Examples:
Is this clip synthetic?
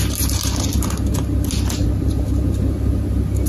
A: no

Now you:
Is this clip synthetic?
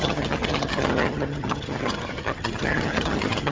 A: yes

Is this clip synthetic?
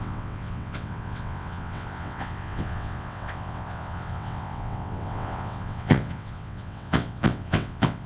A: yes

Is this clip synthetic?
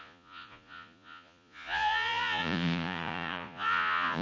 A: yes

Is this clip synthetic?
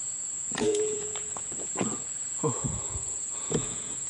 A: yes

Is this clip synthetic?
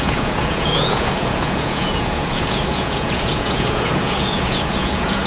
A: yes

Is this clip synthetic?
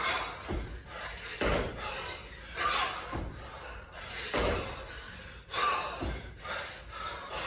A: no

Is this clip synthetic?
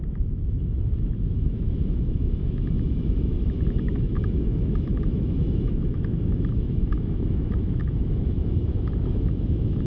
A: yes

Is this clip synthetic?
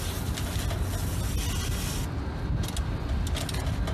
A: no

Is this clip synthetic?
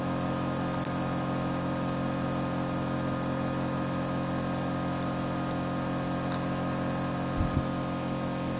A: no